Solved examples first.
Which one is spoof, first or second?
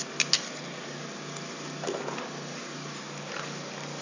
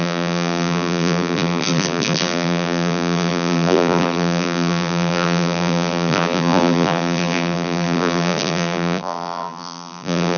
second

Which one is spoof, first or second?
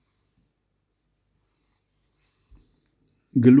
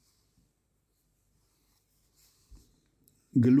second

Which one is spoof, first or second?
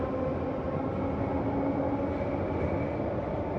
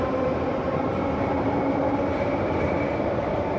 second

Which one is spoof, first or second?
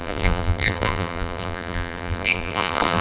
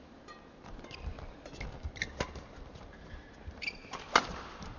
first